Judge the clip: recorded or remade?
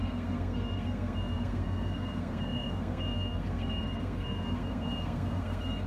remade